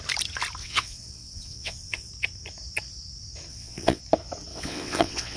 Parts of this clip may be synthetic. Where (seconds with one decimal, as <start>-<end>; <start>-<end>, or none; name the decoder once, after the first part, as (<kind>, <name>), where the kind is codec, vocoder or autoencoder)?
0.6-2.1 (vocoder, WaveNeXt); 3.5-4.0; 4.5-5.4